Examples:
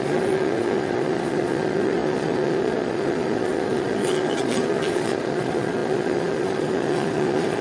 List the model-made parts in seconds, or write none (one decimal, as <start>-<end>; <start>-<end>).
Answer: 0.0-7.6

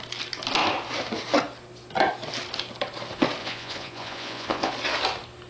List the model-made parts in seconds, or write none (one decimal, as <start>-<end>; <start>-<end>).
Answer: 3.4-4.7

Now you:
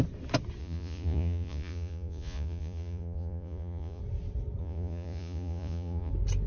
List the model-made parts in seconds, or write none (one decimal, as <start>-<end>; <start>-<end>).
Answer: 0.6-4.0; 4.6-6.1